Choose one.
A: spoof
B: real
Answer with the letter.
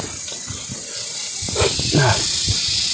B